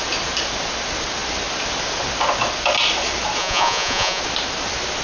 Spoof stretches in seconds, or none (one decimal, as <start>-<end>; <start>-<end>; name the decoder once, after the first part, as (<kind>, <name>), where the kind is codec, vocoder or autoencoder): 3.4-4.2 (vocoder, Vocos)